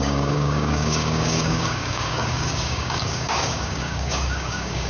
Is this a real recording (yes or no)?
no